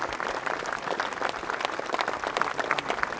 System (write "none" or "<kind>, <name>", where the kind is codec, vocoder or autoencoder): none